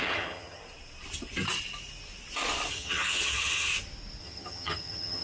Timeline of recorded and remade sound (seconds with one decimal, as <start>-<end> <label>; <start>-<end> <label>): 0.0-0.6 remade; 0.6-2.7 recorded; 2.7-3.7 remade; 3.7-4.2 recorded; 4.2-5.2 remade